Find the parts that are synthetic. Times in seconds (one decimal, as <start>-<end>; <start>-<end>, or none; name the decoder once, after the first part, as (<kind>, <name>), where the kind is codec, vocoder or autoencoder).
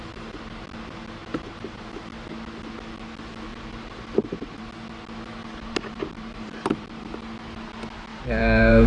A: 1.2-1.9 (vocoder, BigVGAN v2); 3.5-4.6; 5.4-7.0; 8.1-8.9